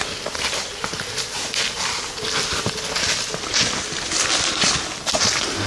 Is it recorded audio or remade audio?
recorded